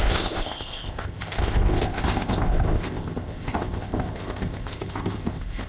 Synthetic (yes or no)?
yes